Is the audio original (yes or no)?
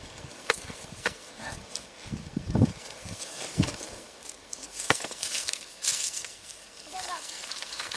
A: no